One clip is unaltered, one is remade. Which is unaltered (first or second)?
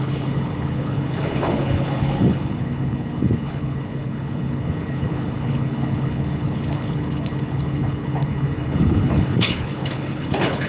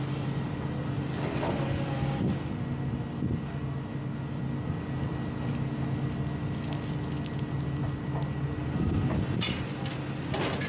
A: second